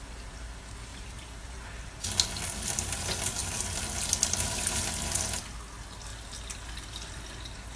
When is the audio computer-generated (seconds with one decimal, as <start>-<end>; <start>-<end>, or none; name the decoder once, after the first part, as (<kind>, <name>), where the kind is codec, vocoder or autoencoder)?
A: 0.9-2.0 (vocoder, BigVGAN v2)